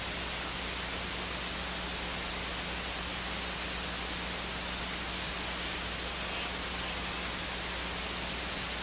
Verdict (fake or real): real